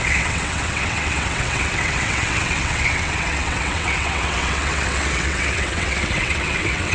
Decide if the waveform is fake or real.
fake